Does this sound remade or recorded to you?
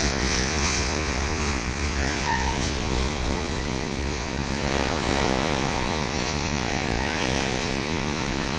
remade